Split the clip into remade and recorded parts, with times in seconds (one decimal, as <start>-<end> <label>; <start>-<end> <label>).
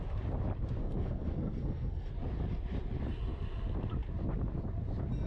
0.0-0.8 recorded; 0.8-2.1 remade; 2.1-5.3 recorded